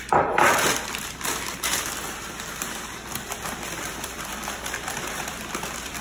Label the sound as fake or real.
fake